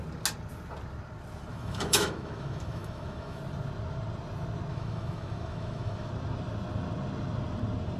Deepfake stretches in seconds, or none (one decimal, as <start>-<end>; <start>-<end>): 1.5-3.4; 4.7-6.1